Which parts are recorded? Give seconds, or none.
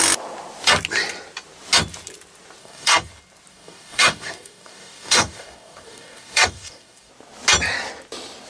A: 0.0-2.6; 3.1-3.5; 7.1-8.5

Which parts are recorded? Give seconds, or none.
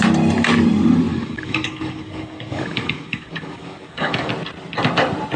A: 0.0-1.1; 4.3-5.4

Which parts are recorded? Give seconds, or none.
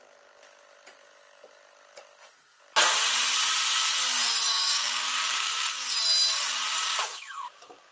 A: 0.0-4.5; 5.9-6.7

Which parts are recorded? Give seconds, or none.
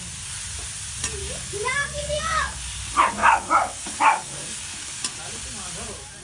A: 0.0-1.2; 2.8-3.2; 5.0-6.2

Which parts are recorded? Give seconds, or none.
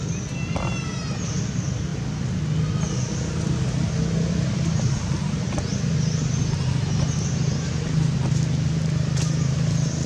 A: 0.0-10.1